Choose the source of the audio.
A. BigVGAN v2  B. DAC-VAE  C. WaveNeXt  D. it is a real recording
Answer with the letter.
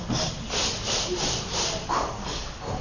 D